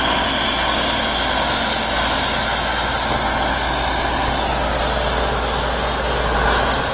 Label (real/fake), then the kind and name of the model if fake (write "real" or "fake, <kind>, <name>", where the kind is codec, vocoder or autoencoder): real